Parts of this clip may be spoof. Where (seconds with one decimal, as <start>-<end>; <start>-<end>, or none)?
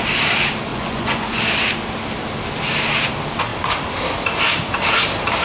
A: 0.7-1.4